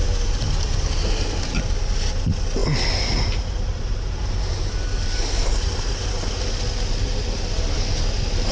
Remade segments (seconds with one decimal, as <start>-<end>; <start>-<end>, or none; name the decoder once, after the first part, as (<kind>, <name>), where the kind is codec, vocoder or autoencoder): none